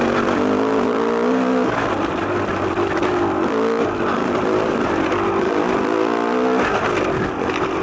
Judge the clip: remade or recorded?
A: recorded